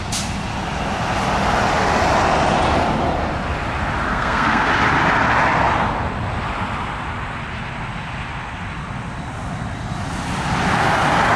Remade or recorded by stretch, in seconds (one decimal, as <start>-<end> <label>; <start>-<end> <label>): 0.0-4.1 recorded; 4.1-4.7 remade; 4.7-11.4 recorded